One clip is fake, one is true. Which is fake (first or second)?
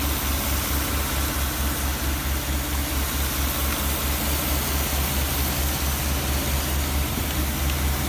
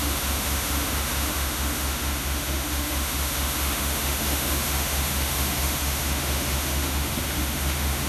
second